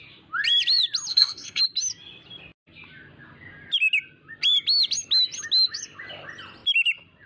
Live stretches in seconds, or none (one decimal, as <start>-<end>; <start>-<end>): 0.0-1.1; 1.6-7.3